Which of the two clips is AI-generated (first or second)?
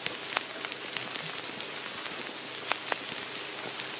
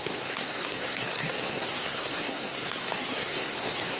second